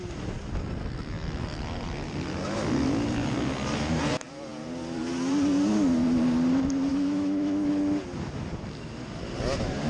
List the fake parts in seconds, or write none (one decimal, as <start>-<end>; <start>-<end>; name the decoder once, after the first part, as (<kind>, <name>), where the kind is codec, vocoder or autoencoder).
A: 6.9-7.7 (autoencoder, DAC-VAE)